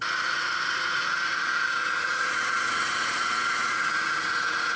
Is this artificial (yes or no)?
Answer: yes